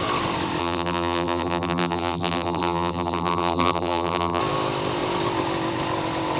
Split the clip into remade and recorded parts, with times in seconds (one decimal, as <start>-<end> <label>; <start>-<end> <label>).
0.0-0.6 recorded; 0.6-4.4 remade; 4.4-6.4 recorded